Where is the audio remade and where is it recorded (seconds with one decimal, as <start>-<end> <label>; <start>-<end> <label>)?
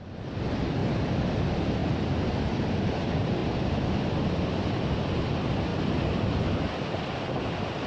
0.0-7.9 recorded